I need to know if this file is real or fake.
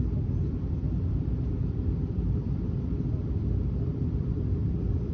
fake